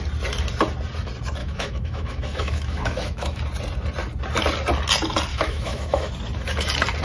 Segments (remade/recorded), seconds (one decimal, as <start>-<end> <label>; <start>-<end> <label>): 0.0-1.4 recorded; 1.4-3.4 remade; 3.4-5.3 recorded; 5.3-6.1 remade; 6.1-7.0 recorded